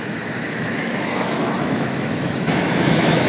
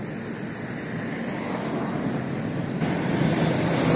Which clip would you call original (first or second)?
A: second